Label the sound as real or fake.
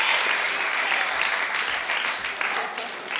real